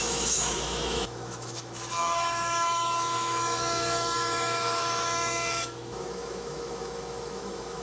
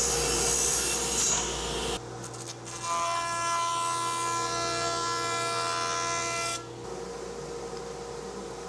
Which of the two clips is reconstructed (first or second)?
first